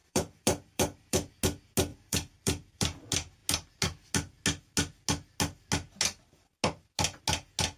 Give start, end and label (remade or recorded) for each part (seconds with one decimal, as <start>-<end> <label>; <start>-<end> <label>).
0.0-1.3 remade; 1.3-1.9 recorded; 1.9-3.0 remade; 3.0-7.8 recorded